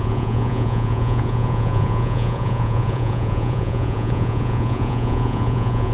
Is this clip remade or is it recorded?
remade